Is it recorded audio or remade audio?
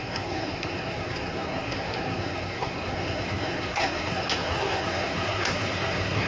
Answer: remade